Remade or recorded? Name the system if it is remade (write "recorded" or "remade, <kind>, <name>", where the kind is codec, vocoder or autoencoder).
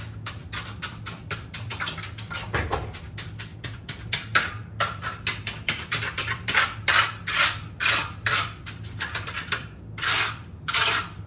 remade, vocoder, BigVGAN v2